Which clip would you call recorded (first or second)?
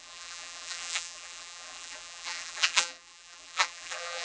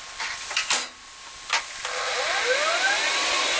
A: second